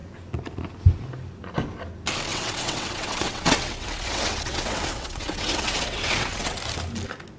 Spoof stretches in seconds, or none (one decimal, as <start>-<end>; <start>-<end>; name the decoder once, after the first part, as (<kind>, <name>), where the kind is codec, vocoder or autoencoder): 2.3-6.6 (vocoder, WaveNeXt)